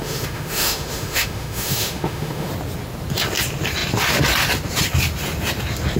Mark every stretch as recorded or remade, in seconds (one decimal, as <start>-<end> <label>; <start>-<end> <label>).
0.0-2.5 remade; 2.5-6.0 recorded